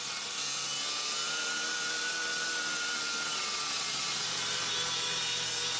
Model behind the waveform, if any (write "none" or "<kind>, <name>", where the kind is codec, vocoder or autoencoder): none